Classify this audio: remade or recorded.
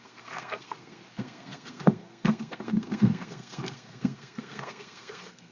remade